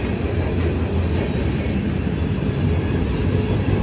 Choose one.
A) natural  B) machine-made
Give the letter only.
A